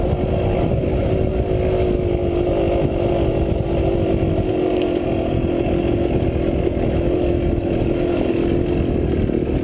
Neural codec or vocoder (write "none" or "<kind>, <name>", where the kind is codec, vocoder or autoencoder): none